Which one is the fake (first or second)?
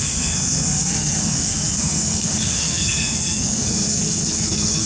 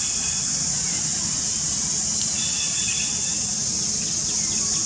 first